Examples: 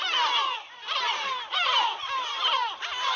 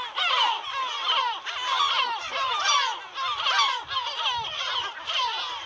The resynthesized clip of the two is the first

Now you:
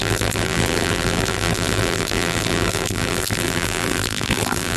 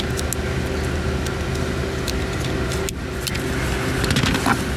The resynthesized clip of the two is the first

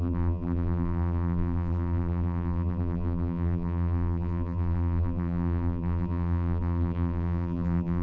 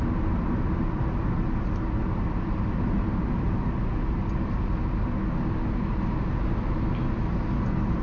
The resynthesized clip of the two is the first